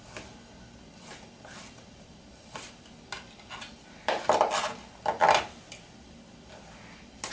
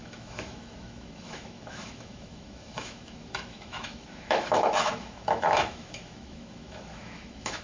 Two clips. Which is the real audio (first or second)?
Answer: first